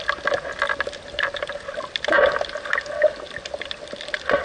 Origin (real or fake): real